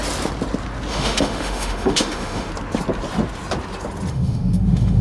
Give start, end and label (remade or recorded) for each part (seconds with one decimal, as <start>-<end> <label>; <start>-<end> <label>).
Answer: 0.0-0.9 recorded; 0.9-2.5 remade; 2.5-4.1 recorded; 4.1-5.0 remade